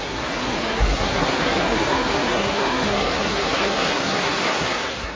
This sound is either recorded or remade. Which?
remade